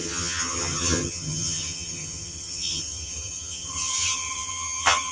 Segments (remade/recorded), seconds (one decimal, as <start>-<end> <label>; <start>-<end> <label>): 0.0-5.1 remade